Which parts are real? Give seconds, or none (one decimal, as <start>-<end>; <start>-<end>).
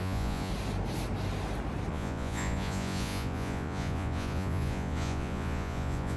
0.5-1.9